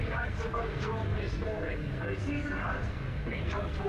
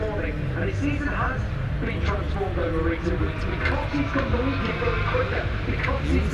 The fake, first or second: first